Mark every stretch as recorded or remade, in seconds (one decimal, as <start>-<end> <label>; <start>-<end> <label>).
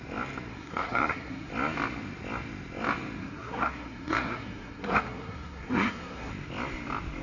0.0-0.5 recorded; 0.5-1.5 remade; 1.5-3.2 recorded; 3.2-6.3 remade; 6.3-7.2 recorded